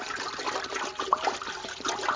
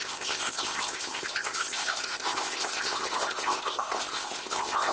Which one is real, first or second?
first